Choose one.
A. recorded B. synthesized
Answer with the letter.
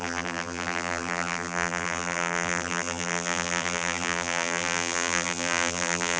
B